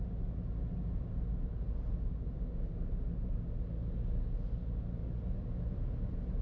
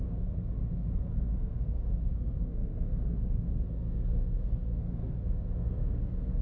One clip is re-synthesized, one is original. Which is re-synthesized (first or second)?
second